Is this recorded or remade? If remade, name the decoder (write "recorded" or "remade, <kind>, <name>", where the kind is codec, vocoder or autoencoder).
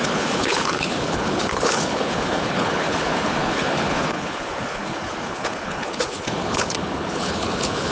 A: remade, codec, HILCodec